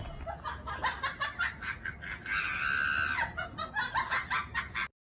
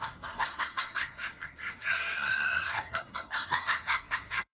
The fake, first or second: second